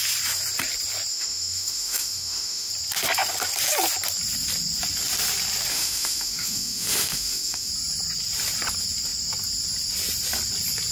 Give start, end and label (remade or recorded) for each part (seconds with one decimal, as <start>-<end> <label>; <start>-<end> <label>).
0.0-1.1 recorded; 1.1-2.7 remade; 2.7-5.7 recorded; 5.7-7.7 remade; 7.7-10.9 recorded